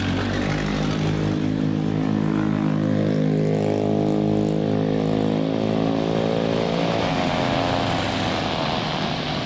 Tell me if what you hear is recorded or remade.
recorded